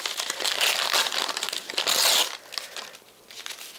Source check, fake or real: real